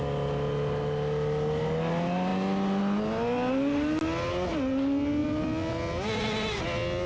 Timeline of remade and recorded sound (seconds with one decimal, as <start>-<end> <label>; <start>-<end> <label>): 0.0-7.1 recorded